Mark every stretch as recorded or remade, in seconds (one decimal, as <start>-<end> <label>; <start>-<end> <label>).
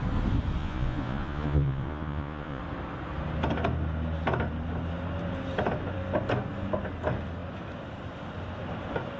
0.0-0.6 recorded; 0.6-2.6 remade; 2.6-9.2 recorded